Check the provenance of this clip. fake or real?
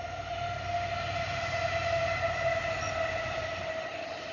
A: real